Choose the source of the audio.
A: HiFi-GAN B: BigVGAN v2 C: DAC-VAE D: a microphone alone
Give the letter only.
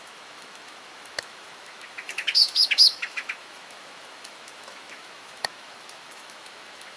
C